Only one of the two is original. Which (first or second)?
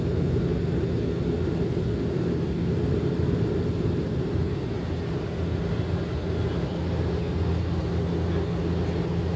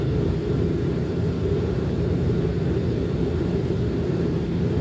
first